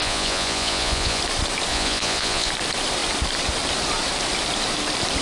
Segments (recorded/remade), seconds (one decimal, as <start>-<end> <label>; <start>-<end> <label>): 0.0-1.2 remade; 1.2-1.7 recorded; 1.7-2.5 remade; 2.5-5.2 recorded